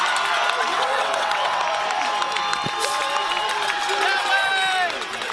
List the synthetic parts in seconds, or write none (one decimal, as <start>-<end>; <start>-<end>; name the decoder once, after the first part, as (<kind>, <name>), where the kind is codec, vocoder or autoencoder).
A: 0.7-1.6 (vocoder, WaveNeXt)